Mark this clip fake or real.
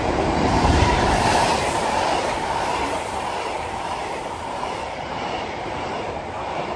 fake